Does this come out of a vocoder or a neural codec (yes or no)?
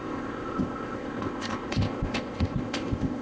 yes